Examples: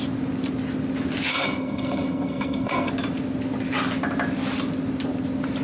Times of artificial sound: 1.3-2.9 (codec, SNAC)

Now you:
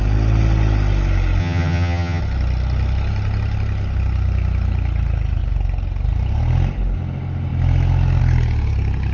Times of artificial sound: 1.4-2.2 (vocoder, HiFi-GAN)

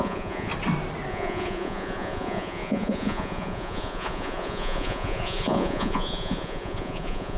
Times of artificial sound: 0.0-0.5 (vocoder, Vocos); 1.1-7.4

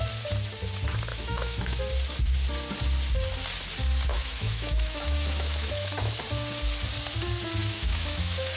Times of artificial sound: 1.1-1.8 (autoencoder, DAC-VAE); 4.1-6.2; 7.6-8.6